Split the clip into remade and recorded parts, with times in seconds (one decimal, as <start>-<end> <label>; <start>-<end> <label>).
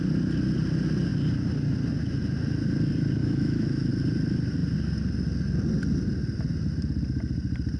0.0-3.2 recorded; 3.2-3.9 remade; 3.9-7.8 recorded